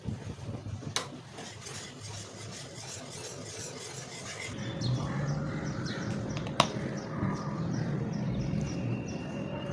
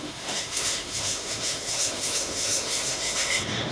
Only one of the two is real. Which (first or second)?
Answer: first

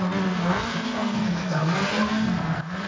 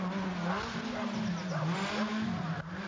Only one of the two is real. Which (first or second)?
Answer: second